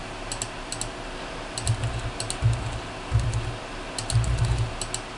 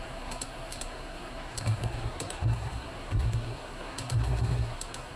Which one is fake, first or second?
second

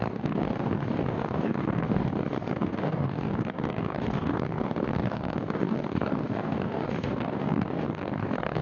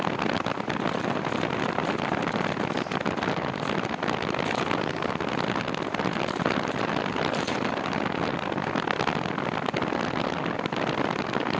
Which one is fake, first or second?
first